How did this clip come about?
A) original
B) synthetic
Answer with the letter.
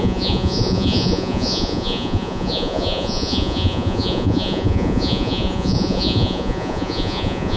B